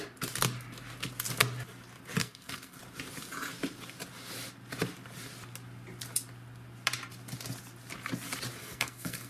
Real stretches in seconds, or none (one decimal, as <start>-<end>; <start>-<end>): 0.0-2.2; 2.8-8.6